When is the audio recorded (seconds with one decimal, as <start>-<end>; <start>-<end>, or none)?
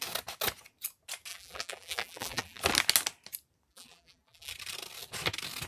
0.0-1.3; 2.6-3.7; 4.5-5.7